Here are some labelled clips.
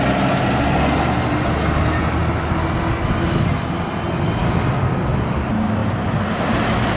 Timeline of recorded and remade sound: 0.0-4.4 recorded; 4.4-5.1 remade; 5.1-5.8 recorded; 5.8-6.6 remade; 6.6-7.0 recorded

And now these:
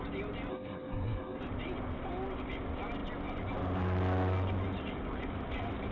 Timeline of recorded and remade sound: 0.0-0.5 recorded; 0.5-1.4 remade; 1.4-5.9 recorded

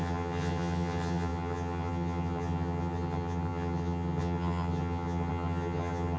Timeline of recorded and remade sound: 0.0-6.2 remade

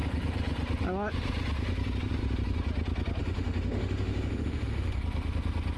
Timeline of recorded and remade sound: 0.0-3.2 recorded; 3.2-5.0 remade; 5.0-5.8 recorded

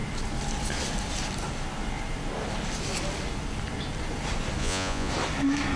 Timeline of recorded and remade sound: 0.0-4.6 recorded; 4.6-5.1 remade; 5.1-5.8 recorded